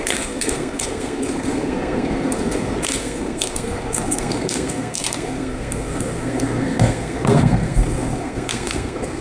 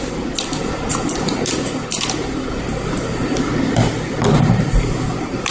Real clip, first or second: second